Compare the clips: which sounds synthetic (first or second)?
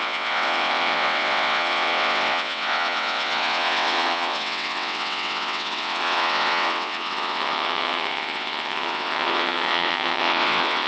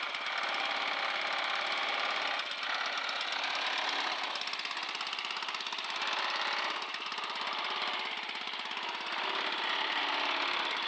first